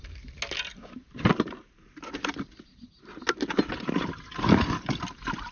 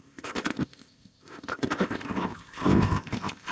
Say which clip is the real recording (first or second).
first